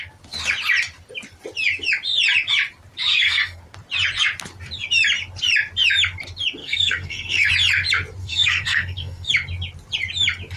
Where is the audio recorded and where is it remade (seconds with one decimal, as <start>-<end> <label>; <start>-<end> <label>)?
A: 0.0-3.1 recorded; 3.1-3.6 remade; 3.6-6.6 recorded; 6.6-7.5 remade; 7.5-8.2 recorded; 8.2-9.3 remade; 9.3-10.6 recorded